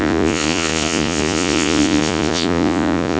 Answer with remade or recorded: remade